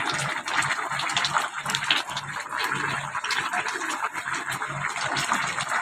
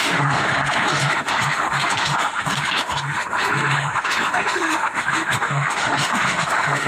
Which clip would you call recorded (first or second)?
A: first